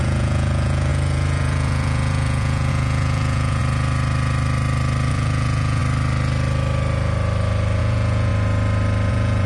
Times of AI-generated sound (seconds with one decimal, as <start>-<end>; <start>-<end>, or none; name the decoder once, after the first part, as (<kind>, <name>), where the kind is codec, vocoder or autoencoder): 0.0-3.6 (vocoder, Vocos); 5.1-5.8; 7.8-8.3; 9.1-9.5